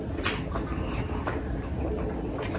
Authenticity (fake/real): real